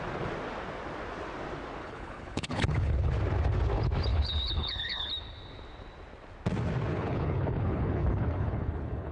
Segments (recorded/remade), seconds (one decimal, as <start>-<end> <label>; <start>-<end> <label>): 0.0-1.8 recorded; 1.8-3.1 remade; 3.1-4.1 recorded; 4.1-5.1 remade; 5.1-6.9 recorded; 6.9-9.1 remade